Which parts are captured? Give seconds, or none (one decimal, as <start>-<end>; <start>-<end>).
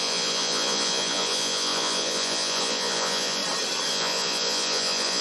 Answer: 3.4-3.9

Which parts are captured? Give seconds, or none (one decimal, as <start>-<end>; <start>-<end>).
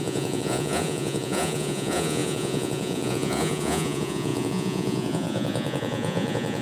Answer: none